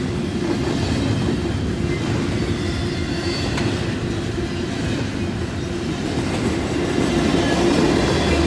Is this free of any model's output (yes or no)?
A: yes